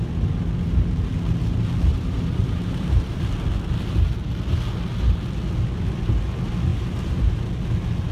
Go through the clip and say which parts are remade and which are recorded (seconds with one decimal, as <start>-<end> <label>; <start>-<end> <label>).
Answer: 0.0-1.9 recorded; 1.9-3.2 remade; 3.2-6.7 recorded; 6.7-7.4 remade; 7.4-8.1 recorded